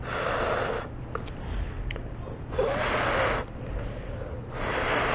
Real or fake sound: real